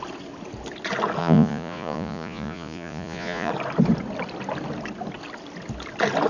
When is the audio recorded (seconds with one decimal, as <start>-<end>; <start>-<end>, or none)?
0.0-1.2; 3.5-6.3